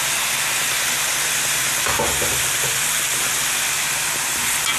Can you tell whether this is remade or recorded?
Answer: recorded